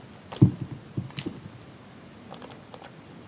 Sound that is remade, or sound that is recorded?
recorded